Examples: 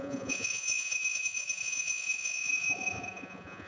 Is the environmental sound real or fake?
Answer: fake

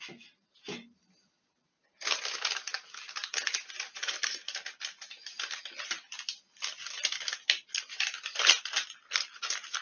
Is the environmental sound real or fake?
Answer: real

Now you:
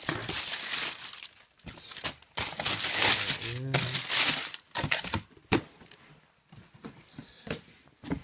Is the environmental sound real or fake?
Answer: fake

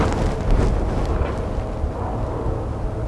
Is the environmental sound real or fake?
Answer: real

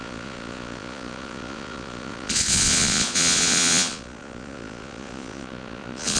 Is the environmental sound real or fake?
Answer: fake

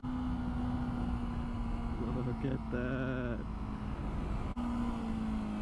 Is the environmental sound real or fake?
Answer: real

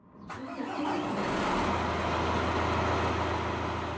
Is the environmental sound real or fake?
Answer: real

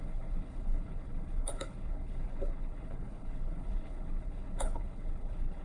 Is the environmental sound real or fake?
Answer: fake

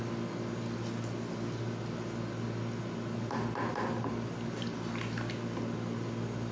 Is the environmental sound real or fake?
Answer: real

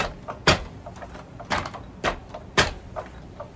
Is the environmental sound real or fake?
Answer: fake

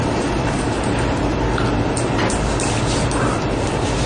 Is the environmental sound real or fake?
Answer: fake